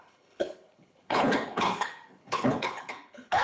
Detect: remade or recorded remade